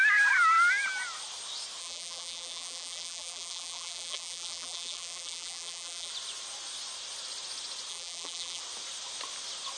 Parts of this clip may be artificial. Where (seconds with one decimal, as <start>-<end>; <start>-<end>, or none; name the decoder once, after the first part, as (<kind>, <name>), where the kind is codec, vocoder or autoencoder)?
1.8-6.1 (vocoder, BigVGAN v2); 7.9-8.6